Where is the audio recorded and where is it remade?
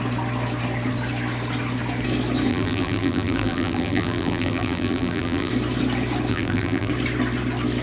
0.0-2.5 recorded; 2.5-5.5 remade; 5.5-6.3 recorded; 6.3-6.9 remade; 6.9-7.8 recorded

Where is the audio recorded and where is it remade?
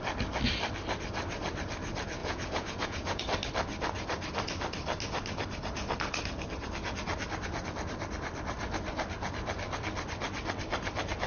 0.0-2.2 recorded; 2.2-3.2 remade; 3.2-11.3 recorded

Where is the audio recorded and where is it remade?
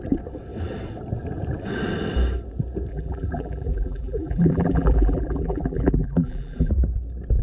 0.0-2.9 recorded; 2.9-6.7 remade; 6.7-7.4 recorded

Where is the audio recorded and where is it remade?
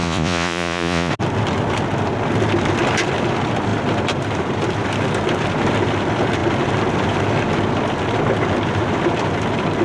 0.0-1.1 remade; 1.1-9.8 recorded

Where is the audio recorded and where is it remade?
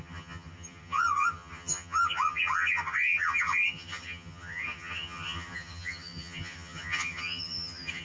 0.0-8.0 remade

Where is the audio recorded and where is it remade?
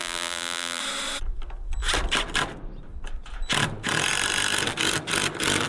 0.0-0.8 remade; 0.8-5.7 recorded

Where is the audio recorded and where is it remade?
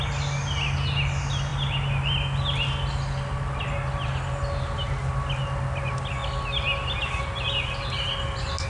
0.0-8.7 recorded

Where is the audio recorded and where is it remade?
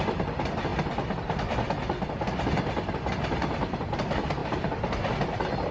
0.0-4.4 recorded; 4.4-5.1 remade; 5.1-5.7 recorded